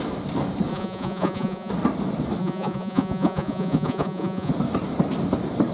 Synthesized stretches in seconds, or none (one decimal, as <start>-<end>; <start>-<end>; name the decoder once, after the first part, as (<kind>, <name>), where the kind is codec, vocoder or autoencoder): 0.7-1.7 (vocoder, Vocos); 2.4-4.5